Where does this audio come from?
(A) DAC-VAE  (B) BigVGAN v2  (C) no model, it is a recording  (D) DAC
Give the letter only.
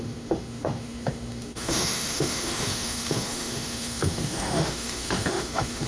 A